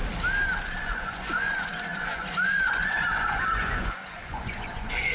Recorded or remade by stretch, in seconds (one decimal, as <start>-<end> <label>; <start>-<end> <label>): 0.0-0.8 recorded; 0.8-5.1 remade